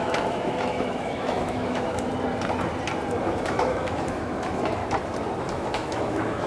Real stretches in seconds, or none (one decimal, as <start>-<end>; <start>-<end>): 2.1-3.2; 4.8-5.4